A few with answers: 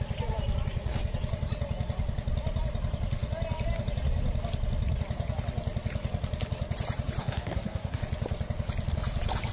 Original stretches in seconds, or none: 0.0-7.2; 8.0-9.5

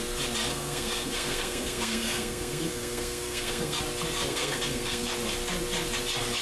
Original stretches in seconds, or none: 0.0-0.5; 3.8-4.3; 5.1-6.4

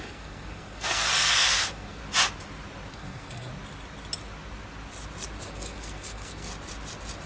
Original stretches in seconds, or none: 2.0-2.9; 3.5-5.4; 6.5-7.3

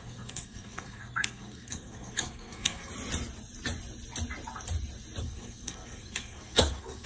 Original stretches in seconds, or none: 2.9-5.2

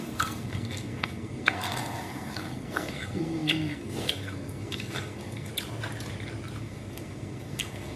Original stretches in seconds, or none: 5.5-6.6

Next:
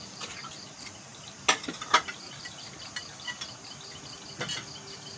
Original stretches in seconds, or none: 0.0-5.2

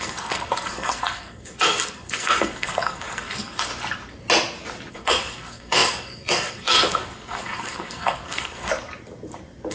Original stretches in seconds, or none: 3.7-4.9; 8.7-9.7

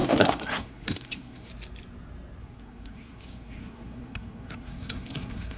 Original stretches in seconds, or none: 1.5-2.4